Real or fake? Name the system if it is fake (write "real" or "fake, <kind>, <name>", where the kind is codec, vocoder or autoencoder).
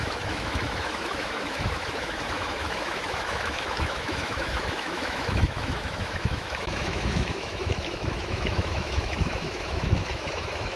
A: fake, autoencoder, DAC-VAE